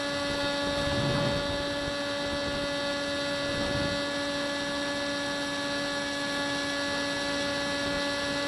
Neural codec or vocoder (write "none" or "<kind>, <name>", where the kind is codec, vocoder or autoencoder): none